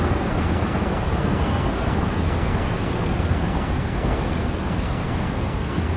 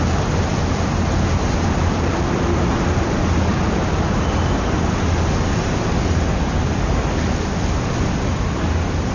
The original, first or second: second